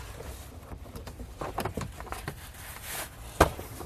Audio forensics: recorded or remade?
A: remade